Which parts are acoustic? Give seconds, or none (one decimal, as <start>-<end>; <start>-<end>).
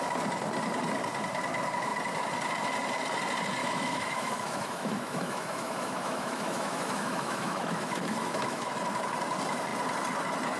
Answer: 0.0-3.6; 8.7-10.6